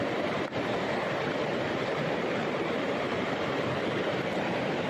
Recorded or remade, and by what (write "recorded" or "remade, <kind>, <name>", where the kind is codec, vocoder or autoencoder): remade, vocoder, BigVGAN v2